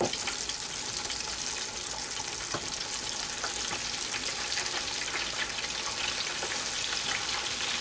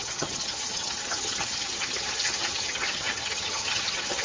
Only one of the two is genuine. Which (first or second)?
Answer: first